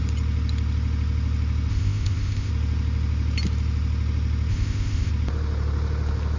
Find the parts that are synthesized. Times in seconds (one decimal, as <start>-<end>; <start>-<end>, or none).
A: 1.7-2.5; 4.5-5.1